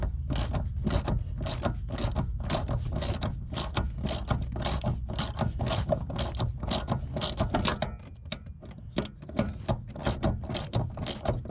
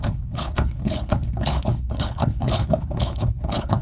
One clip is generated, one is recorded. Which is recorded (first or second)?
first